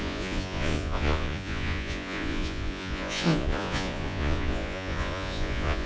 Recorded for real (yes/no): no